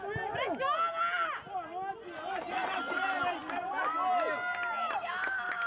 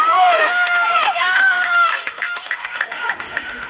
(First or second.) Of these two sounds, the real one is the first